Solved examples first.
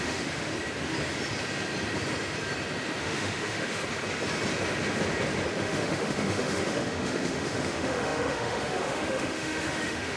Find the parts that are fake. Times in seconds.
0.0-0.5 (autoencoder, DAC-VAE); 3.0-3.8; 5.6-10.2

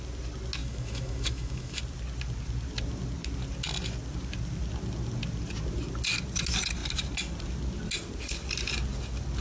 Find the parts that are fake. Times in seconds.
0.6-1.8 (autoencoder, DAC-VAE)

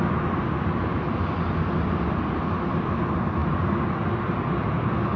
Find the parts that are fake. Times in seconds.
none

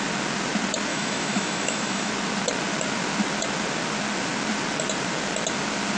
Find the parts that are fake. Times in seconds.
0.9-2.1 (autoencoder, DAC-VAE)